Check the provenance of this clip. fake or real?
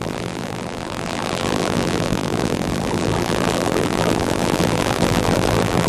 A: fake